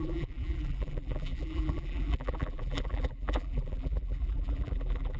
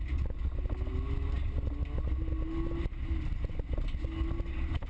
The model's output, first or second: first